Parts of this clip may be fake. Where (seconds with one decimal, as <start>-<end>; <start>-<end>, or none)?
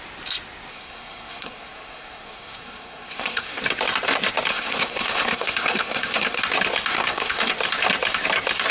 0.7-3.6; 4.5-6.4; 6.9-7.5